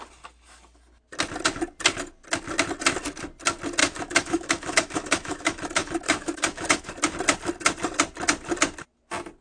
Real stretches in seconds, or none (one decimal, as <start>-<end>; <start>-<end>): 0.0-3.8; 6.9-9.4